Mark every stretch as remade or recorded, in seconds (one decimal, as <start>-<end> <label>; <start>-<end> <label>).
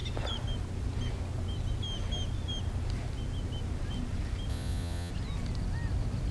0.0-4.5 recorded; 4.5-5.1 remade; 5.1-6.3 recorded